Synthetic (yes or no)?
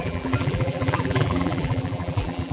yes